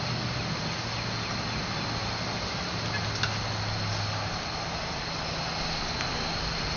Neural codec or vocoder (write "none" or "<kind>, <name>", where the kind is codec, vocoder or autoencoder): none